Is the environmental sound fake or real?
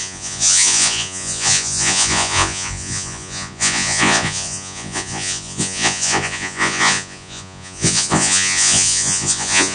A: fake